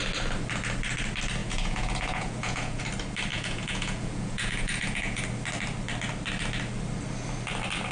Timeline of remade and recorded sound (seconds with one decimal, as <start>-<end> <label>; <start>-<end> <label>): 0.0-1.4 recorded; 1.4-2.8 remade; 2.8-3.3 recorded; 3.3-5.2 remade; 5.2-7.9 recorded